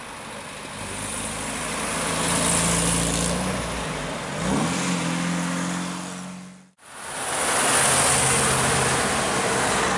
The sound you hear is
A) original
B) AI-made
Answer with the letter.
A